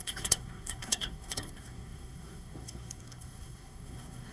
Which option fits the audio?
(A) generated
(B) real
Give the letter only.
A